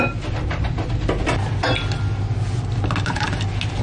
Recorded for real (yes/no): yes